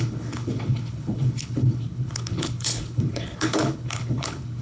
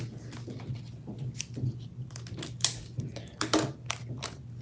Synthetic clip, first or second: first